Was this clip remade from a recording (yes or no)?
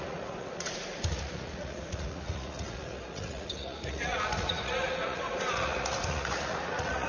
yes